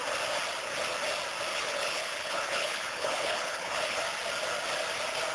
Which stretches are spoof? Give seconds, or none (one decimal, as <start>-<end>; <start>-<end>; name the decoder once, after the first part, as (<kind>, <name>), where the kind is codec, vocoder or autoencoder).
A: 1.5-4.0 (codec, HILCodec)

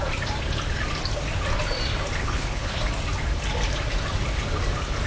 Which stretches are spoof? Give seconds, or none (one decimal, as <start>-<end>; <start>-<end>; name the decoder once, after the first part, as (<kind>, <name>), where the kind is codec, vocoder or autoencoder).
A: 2.2-2.8 (codec, HILCodec)

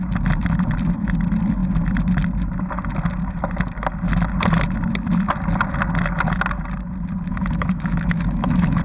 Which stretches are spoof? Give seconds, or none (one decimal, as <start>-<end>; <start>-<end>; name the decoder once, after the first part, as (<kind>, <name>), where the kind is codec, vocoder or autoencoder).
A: 7.3-8.8 (autoencoder, DAC-VAE)